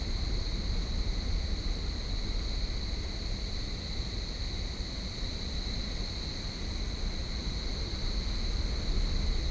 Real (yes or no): yes